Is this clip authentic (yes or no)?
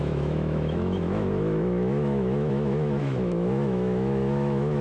no